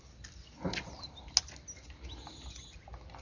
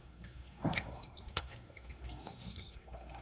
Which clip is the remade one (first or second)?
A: second